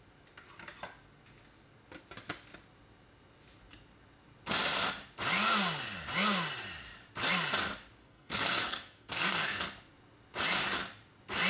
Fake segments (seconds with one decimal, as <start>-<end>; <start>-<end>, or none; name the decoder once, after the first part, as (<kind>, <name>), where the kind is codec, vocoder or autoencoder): 8.0-9.6 (codec, SNAC)